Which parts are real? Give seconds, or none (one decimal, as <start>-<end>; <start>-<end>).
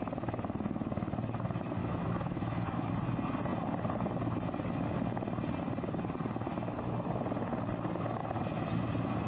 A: 0.0-1.8; 2.9-9.3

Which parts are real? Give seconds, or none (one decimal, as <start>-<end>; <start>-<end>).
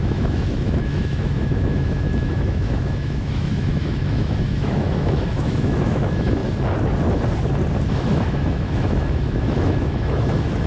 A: 6.4-7.9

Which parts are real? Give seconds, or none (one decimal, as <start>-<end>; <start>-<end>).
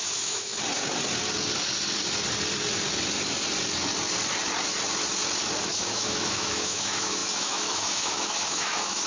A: 0.5-5.6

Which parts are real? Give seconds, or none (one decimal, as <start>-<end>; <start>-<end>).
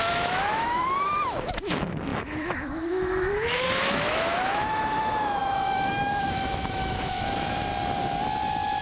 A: 7.7-8.8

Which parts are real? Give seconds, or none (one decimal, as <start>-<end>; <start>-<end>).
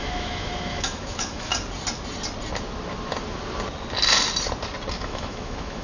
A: 1.5-5.0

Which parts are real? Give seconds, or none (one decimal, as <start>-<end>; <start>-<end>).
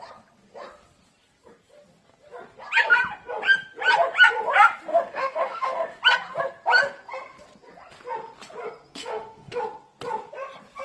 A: 0.0-4.9; 6.0-9.0; 9.6-10.8